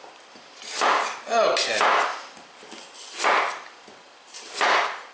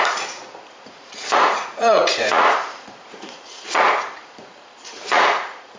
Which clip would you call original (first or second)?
first